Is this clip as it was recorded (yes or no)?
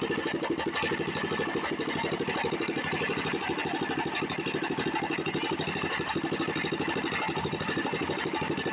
yes